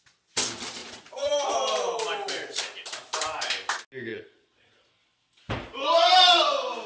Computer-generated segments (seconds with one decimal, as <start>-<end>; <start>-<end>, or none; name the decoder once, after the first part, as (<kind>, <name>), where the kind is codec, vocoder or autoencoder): 0.8-1.5 (vocoder, Vocos); 4.1-4.9